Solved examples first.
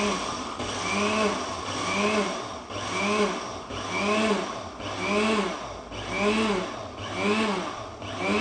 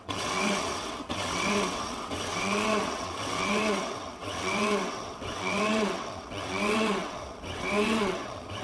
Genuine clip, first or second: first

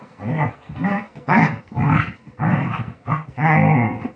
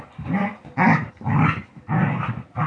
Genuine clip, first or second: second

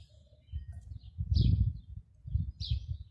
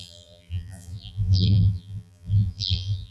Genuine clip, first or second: first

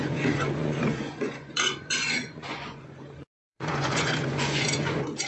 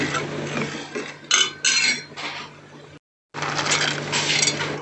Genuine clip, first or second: second